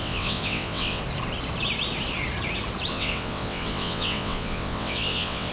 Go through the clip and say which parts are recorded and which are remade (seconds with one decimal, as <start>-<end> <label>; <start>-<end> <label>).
0.0-1.0 remade; 1.0-2.9 recorded; 2.9-5.5 remade